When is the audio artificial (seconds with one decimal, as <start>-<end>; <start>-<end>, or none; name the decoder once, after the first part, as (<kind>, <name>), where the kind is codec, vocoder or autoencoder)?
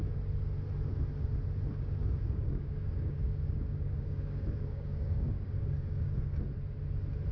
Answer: 2.0-6.4 (codec, DAC)